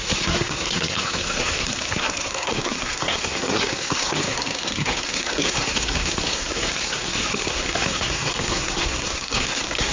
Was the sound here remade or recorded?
remade